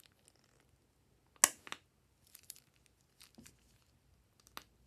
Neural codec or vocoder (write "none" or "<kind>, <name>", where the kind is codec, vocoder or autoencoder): none